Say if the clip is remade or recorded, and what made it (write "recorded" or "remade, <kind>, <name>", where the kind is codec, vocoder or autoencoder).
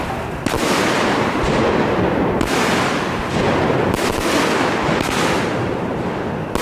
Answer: recorded